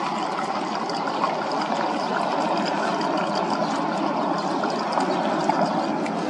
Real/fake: real